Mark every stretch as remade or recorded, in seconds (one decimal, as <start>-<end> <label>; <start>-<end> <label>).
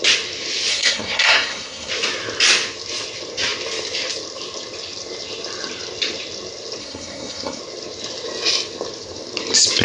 0.0-0.7 recorded; 0.7-1.9 remade; 1.9-6.8 recorded; 6.8-7.6 remade; 7.6-9.8 recorded